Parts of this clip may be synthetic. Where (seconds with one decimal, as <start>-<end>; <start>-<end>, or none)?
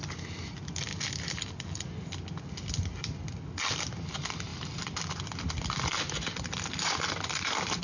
0.9-2.0; 4.5-7.8